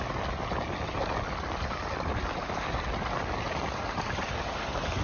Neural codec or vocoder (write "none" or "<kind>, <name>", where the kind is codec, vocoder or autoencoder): none